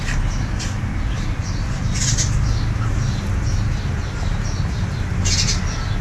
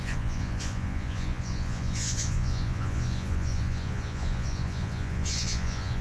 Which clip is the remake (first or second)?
second